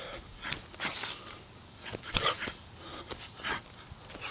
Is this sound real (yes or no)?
yes